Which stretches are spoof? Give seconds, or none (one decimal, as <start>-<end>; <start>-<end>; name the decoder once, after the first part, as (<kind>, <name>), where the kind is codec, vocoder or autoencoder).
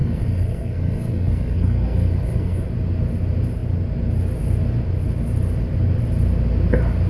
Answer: 0.0-2.7 (codec, SNAC)